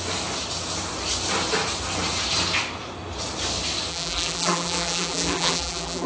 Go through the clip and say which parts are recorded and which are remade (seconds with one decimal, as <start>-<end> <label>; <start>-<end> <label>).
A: 0.0-3.9 recorded; 3.9-6.1 remade